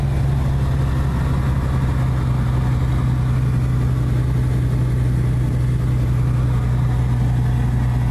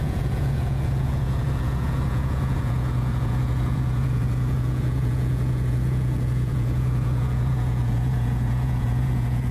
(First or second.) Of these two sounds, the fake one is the second